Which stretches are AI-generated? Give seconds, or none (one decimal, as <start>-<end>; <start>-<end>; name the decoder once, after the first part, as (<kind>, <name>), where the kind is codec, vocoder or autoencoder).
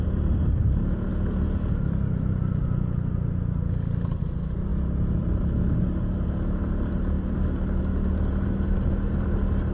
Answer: none